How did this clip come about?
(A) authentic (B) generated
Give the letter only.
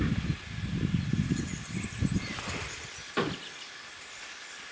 A